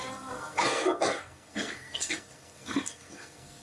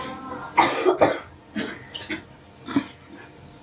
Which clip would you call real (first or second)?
second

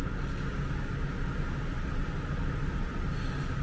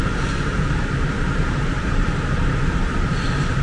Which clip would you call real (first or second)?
first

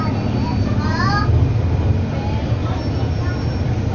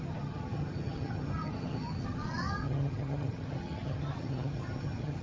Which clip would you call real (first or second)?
first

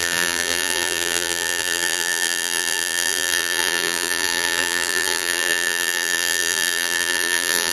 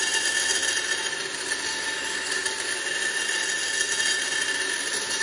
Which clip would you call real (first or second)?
second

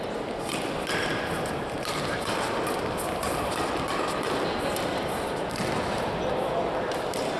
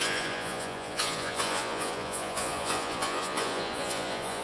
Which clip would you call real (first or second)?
first